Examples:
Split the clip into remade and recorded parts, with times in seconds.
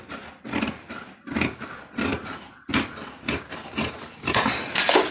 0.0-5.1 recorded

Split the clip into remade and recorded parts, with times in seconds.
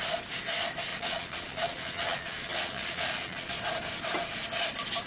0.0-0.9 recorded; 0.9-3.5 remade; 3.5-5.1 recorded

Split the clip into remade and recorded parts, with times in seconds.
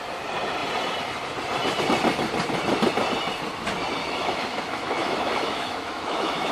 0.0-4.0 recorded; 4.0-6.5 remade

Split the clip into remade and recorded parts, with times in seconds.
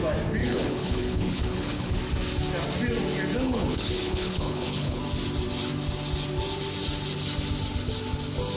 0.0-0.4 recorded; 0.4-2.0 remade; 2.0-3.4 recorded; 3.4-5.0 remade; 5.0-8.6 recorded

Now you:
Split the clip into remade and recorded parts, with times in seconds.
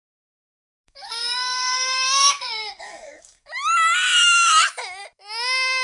0.0-3.5 remade; 3.5-5.8 recorded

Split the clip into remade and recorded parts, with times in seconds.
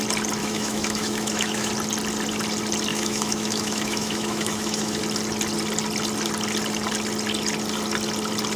0.0-0.4 recorded; 0.4-1.7 remade; 1.7-2.9 recorded; 2.9-5.0 remade; 5.0-8.6 recorded